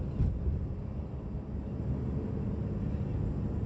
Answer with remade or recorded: recorded